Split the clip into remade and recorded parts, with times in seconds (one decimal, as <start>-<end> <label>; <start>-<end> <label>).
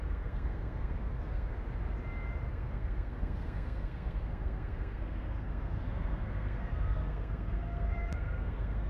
0.0-1.5 remade; 1.5-2.5 recorded; 2.5-8.9 remade